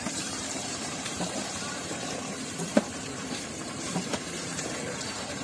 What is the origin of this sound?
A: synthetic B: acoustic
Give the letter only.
A